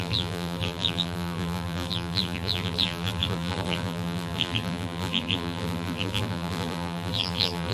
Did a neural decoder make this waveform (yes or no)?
yes